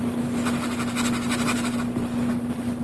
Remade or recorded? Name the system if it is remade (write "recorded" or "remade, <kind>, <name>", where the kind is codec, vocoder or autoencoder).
remade, vocoder, BigVGAN v2